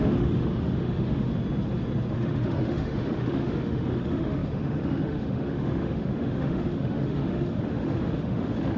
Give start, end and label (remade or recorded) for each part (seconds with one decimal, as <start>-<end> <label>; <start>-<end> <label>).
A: 0.0-1.3 remade; 1.3-2.1 recorded; 2.1-8.8 remade